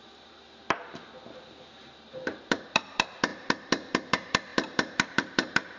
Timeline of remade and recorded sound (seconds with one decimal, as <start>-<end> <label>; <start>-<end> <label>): 0.0-0.6 remade; 0.6-1.6 recorded; 1.6-5.8 remade